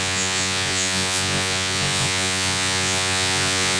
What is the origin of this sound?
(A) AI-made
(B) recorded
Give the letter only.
A